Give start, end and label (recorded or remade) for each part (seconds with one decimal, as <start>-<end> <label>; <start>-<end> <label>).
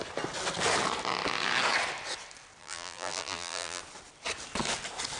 0.0-2.6 recorded; 2.6-3.8 remade; 3.8-5.2 recorded